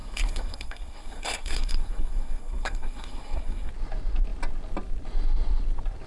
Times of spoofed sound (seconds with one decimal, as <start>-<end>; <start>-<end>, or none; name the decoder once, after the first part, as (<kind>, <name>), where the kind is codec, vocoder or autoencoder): 0.0-3.7 (codec, SNAC)

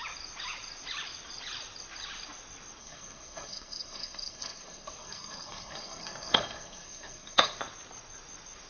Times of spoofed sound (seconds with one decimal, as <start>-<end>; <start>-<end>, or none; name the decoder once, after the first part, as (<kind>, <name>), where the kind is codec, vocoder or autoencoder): 2.8-7.6 (codec, SNAC)

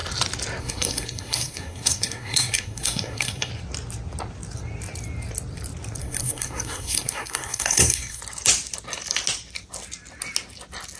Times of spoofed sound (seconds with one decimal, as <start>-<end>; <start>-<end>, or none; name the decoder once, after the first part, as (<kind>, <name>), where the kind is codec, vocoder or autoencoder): 0.6-3.5 (codec, SNAC); 6.0-8.2

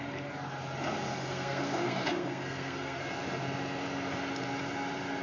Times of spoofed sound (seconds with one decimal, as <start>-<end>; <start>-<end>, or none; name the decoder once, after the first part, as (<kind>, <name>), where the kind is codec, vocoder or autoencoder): 1.1-3.0 (codec, SNAC)

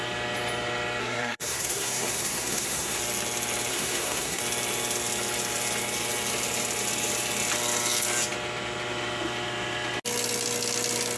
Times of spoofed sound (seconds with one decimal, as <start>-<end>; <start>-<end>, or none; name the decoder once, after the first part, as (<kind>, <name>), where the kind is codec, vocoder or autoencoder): 1.0-3.0 (codec, SNAC); 3.7-4.4

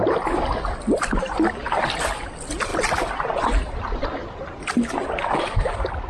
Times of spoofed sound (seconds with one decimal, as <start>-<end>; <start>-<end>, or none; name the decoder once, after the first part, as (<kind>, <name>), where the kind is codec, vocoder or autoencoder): none

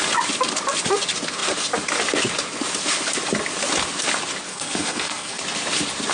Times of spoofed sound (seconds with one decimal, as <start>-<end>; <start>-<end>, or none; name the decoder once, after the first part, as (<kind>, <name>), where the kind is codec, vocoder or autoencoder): 4.5-5.4 (codec, SNAC)

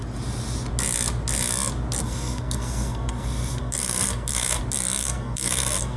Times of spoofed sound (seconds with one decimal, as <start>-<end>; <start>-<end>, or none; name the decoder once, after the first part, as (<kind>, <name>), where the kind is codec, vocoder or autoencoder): 2.0-4.6 (codec, SNAC); 5.0-6.0